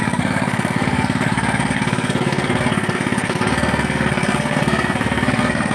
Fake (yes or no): yes